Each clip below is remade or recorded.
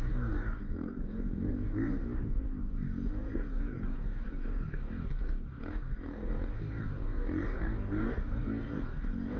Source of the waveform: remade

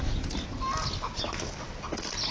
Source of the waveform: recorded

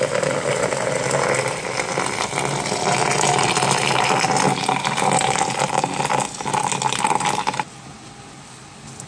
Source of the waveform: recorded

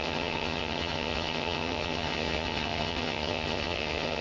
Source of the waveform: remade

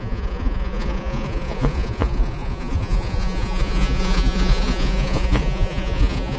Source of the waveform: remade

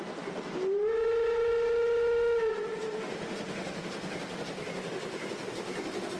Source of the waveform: recorded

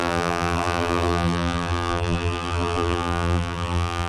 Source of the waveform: remade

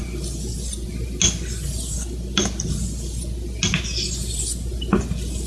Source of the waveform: recorded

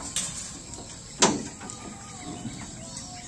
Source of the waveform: recorded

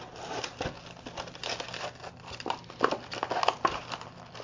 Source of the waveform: recorded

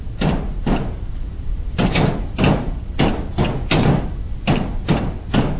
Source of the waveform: recorded